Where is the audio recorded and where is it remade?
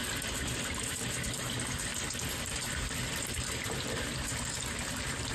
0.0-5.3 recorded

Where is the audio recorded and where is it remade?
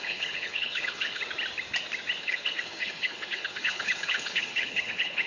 0.0-1.2 remade; 1.2-2.2 recorded; 2.2-5.3 remade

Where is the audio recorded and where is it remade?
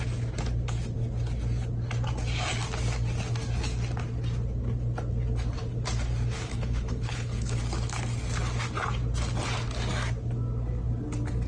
0.0-6.5 recorded; 6.5-7.6 remade; 7.6-11.5 recorded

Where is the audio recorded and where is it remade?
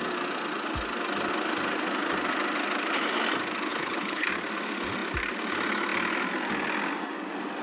0.0-3.7 recorded; 3.7-4.3 remade; 4.3-7.6 recorded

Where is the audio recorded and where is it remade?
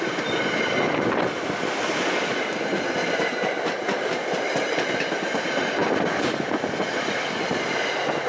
0.0-8.3 recorded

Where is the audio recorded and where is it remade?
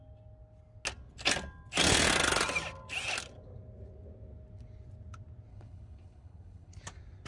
0.0-5.5 recorded; 5.5-6.8 remade; 6.8-7.3 recorded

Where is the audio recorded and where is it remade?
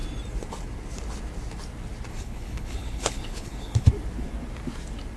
0.0-2.1 recorded; 2.1-3.9 remade; 3.9-5.2 recorded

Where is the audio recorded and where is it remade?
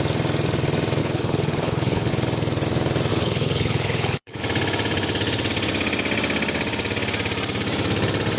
0.0-1.0 recorded; 1.0-2.1 remade; 2.1-3.1 recorded; 3.1-4.4 remade; 4.4-8.4 recorded